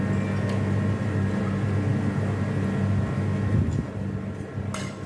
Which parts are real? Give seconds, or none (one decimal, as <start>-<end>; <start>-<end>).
0.0-5.1